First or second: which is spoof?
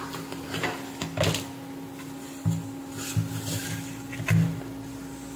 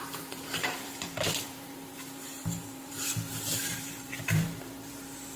second